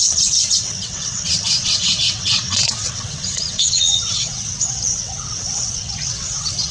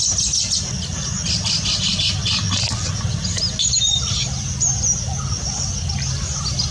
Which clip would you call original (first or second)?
second